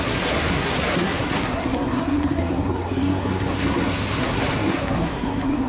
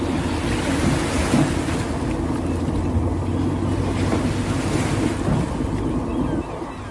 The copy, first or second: first